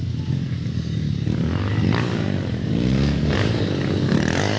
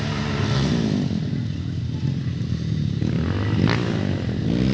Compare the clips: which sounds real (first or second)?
second